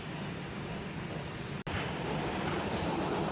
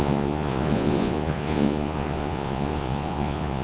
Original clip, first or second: first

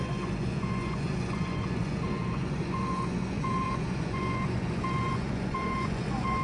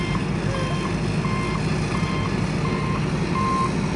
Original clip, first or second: second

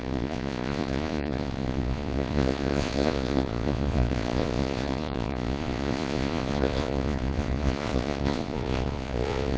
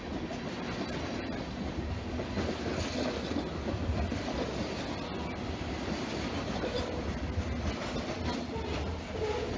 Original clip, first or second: second